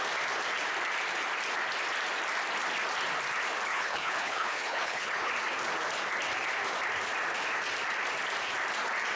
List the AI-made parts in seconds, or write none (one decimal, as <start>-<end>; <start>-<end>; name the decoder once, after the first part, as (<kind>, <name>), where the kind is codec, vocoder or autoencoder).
3.7-5.3 (codec, HILCodec)